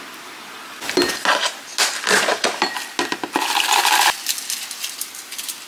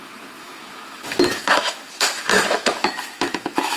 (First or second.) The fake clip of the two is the second